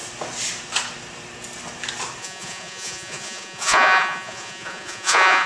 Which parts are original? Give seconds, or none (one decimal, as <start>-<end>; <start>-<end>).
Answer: 0.0-2.2